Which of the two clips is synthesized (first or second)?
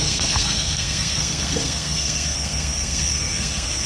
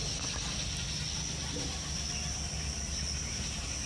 first